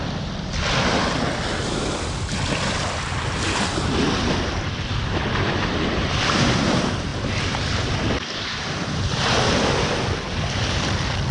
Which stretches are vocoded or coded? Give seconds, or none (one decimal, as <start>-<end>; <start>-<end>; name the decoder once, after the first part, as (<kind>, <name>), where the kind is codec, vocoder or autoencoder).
none